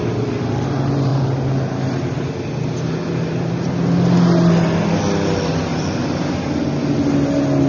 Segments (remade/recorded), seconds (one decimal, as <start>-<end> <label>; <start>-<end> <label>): 0.0-7.7 recorded